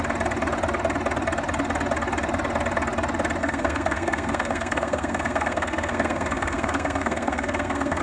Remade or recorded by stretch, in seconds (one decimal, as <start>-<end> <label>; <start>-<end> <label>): 0.0-3.4 recorded; 3.4-8.0 remade